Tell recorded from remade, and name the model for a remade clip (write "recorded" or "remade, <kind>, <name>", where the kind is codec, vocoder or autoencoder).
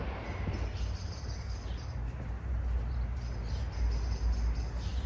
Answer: recorded